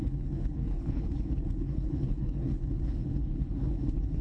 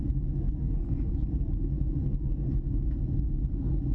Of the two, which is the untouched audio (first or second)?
second